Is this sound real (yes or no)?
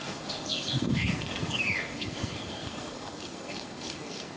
no